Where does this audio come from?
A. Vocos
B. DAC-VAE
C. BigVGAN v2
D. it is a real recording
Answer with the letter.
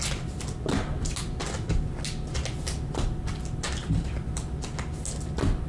D